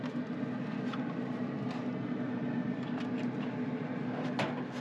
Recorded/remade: recorded